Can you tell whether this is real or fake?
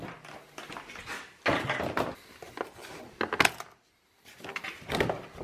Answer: real